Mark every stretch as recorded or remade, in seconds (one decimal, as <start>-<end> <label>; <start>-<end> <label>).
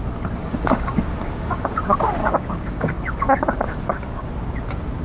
0.0-0.4 recorded; 0.4-1.8 remade; 1.8-2.2 recorded; 2.2-4.3 remade; 4.3-5.0 recorded